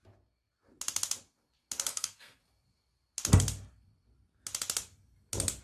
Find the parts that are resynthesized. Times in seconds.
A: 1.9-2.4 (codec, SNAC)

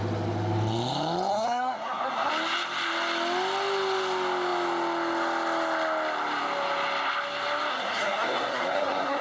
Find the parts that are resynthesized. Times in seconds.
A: 1.3-2.3 (codec, SNAC); 7.7-9.2

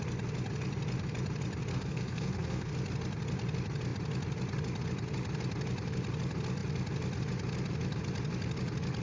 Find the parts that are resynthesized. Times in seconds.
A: 1.7-2.7 (codec, SNAC)

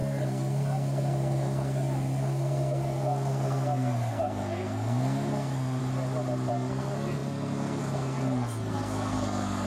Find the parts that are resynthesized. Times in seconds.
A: 0.0-5.8 (codec, SNAC); 6.5-9.7

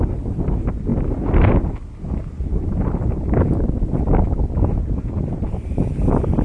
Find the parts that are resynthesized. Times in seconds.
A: none

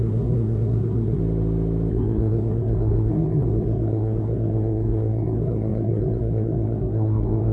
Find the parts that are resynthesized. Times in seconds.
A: 0.0-1.2 (codec, SNAC); 1.9-7.5

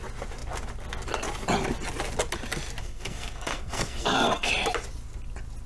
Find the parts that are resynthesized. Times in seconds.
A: 2.8-4.5 (codec, SNAC)

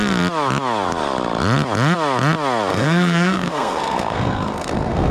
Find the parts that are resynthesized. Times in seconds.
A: 2.7-5.1 (codec, SNAC)